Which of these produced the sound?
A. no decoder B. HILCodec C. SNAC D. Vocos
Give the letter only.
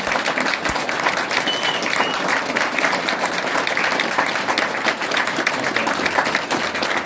A